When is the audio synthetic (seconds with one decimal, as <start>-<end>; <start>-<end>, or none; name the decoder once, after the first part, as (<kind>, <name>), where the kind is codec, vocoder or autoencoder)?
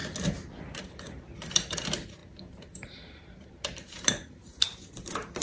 0.8-5.4 (vocoder, BigVGAN v2)